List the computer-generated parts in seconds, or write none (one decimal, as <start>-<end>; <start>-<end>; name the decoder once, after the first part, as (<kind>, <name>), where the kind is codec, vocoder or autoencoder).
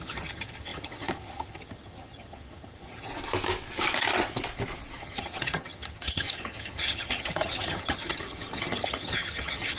0.0-3.1 (vocoder, HiFi-GAN); 5.0-9.8